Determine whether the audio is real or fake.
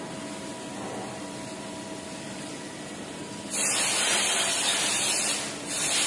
real